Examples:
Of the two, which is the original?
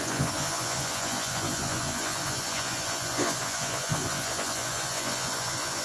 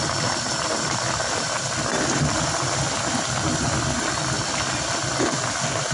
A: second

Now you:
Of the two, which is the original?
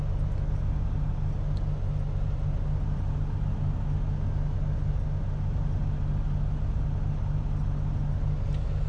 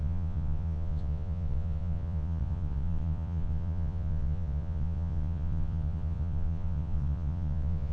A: first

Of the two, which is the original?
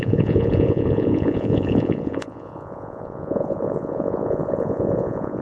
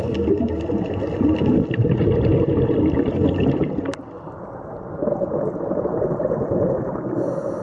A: second